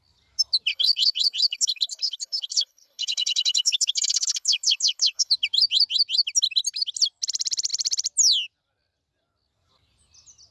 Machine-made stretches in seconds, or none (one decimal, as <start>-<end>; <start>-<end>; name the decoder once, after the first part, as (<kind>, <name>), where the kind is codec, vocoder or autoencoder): 0.7-5.3 (codec, HILCodec)